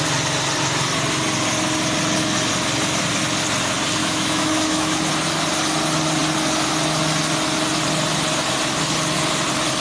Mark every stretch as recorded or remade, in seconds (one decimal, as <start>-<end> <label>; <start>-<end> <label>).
0.0-4.0 recorded; 4.0-5.0 remade; 5.0-9.8 recorded